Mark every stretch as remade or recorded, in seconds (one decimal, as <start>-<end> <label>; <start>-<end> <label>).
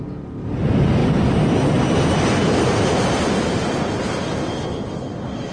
0.0-1.0 recorded; 1.0-2.2 remade; 2.2-5.5 recorded